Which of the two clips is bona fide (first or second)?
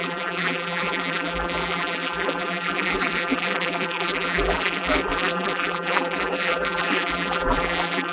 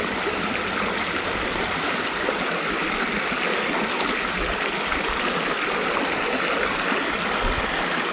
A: second